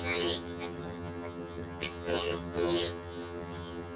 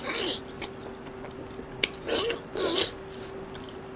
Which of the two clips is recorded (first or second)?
second